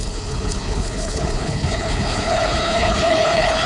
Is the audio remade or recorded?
remade